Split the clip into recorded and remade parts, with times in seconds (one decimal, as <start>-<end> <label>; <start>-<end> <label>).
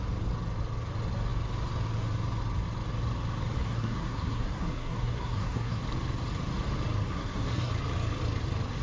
0.0-3.6 recorded; 3.6-5.8 remade; 5.8-7.1 recorded; 7.1-7.7 remade; 7.7-8.8 recorded